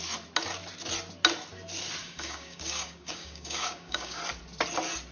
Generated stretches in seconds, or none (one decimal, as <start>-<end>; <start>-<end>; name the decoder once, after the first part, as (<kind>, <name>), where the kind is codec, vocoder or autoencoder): 2.0-4.2 (codec, DAC)